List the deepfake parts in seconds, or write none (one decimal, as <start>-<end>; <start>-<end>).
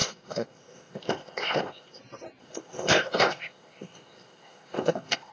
0.0-2.0; 2.4-5.3